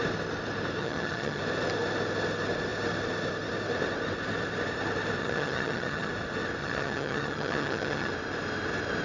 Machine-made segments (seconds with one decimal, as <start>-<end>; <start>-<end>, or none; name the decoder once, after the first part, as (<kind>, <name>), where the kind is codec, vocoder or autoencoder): 0.8-1.4 (vocoder, HiFi-GAN); 5.2-6.1; 6.6-8.1